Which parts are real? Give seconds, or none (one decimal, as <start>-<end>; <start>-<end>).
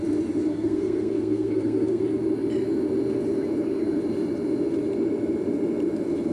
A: 0.0-0.5; 2.0-6.3